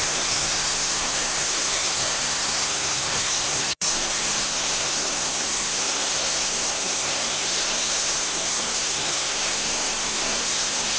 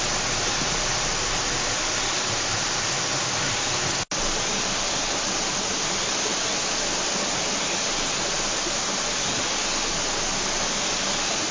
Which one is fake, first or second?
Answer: first